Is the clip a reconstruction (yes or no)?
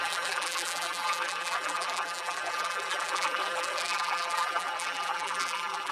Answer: yes